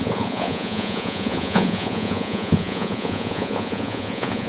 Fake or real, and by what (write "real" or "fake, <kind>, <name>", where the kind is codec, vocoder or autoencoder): fake, vocoder, Vocos